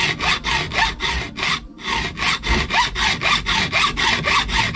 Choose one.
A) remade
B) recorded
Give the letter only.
B